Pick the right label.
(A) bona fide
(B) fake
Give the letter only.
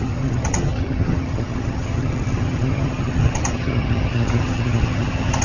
B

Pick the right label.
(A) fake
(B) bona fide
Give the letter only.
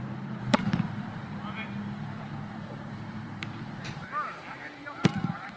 A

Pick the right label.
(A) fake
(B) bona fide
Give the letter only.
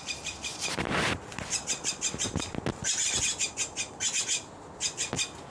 B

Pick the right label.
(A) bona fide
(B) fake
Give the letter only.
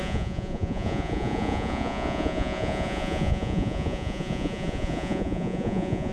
B